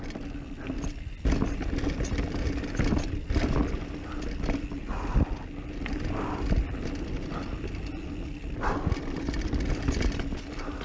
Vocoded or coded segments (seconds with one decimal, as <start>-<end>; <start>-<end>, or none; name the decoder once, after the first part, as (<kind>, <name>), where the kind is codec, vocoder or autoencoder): none